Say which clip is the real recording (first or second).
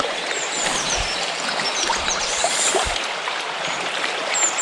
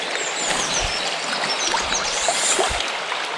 second